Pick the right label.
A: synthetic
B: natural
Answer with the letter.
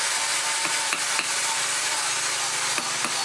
B